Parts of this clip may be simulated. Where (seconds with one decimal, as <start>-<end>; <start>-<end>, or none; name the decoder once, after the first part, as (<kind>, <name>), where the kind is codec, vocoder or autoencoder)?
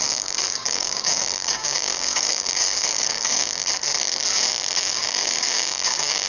0.0-3.6 (codec, DAC); 4.8-6.3